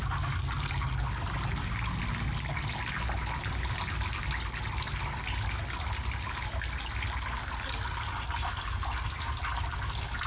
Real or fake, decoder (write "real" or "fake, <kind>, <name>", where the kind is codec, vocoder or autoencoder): real